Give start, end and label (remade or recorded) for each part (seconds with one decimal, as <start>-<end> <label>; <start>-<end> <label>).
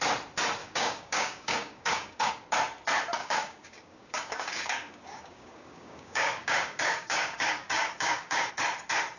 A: 0.0-0.6 recorded; 0.6-2.3 remade; 2.3-3.2 recorded; 3.2-8.5 remade; 8.5-9.2 recorded